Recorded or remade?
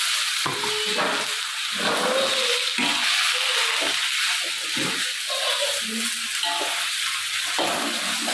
recorded